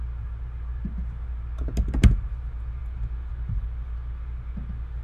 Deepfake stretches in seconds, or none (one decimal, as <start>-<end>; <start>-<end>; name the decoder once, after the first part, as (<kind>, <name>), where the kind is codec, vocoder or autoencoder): none